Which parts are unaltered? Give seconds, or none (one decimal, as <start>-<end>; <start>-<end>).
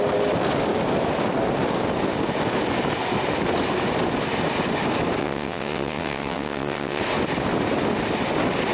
0.0-5.2; 7.0-8.7